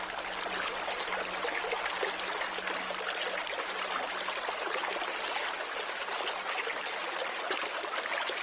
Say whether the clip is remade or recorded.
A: recorded